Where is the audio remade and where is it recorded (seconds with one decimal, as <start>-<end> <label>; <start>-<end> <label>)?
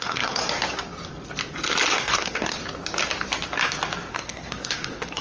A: 0.0-0.4 remade; 0.4-1.9 recorded; 1.9-2.6 remade; 2.6-4.1 recorded; 4.1-5.2 remade